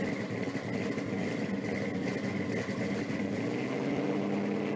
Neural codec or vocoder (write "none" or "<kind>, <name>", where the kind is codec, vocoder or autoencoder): none